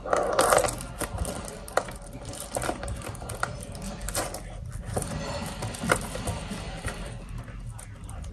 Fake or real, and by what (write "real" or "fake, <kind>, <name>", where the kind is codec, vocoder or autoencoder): fake, vocoder, BigVGAN v2